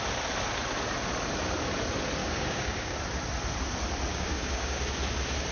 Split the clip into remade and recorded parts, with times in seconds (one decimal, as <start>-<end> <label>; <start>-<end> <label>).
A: 0.0-2.2 recorded; 2.2-2.9 remade; 2.9-4.1 recorded; 4.1-4.8 remade; 4.8-5.5 recorded